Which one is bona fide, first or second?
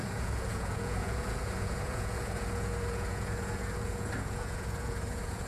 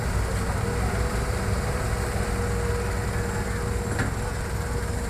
second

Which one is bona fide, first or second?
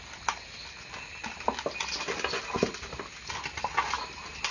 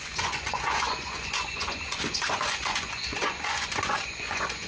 first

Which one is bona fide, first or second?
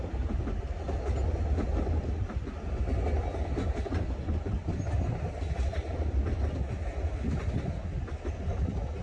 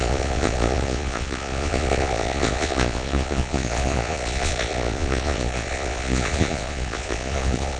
first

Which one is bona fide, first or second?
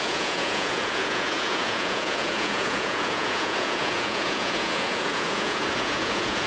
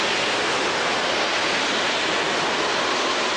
second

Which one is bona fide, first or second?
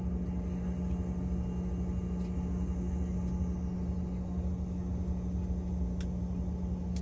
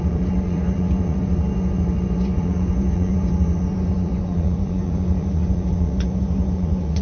first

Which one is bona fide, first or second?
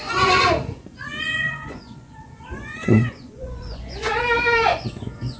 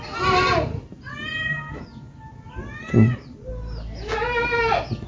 second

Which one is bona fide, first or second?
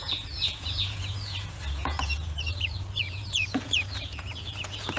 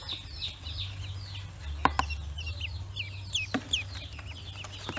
second